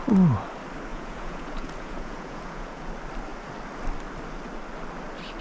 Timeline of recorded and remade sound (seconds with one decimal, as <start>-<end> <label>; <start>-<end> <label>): 0.0-0.9 recorded; 0.9-2.9 remade; 2.9-5.4 recorded